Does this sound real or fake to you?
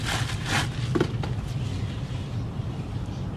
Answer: real